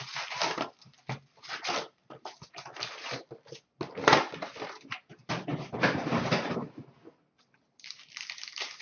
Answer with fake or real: real